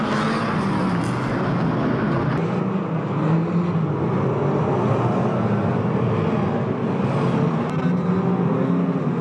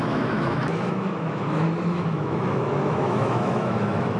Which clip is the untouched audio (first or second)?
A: first